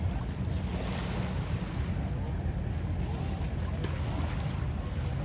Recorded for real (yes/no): yes